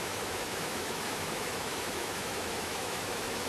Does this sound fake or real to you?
fake